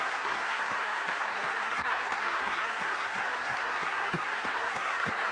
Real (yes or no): no